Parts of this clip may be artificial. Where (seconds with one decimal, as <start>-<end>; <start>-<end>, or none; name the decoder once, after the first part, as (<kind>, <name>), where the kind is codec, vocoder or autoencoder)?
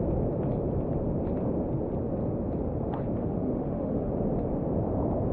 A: 3.2-4.1 (autoencoder, DAC-VAE)